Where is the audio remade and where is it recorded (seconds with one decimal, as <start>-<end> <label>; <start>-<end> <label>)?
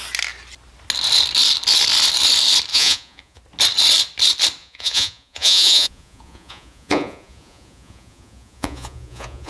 0.0-2.7 recorded; 2.7-3.4 remade; 3.4-4.6 recorded; 4.6-9.5 remade